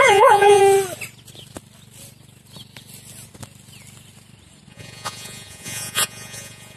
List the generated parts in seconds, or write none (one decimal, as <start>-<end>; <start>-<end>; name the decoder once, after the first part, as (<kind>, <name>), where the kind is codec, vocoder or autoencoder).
0.0-0.6 (vocoder, Vocos); 4.7-6.8